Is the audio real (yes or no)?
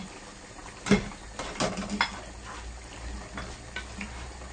yes